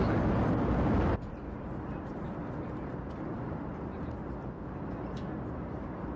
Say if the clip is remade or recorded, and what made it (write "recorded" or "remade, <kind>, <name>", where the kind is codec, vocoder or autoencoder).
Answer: recorded